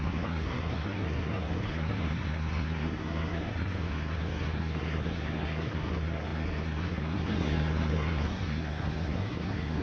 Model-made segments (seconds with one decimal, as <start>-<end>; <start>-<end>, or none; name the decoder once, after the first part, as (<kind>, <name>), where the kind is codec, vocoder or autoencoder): 0.0-9.8 (codec, SNAC)